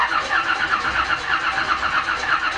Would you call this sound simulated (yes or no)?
no